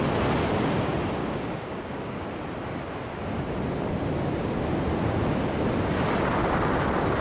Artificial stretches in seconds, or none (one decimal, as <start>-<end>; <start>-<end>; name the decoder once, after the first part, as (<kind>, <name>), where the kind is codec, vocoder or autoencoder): 1.2-2.2 (codec, DAC)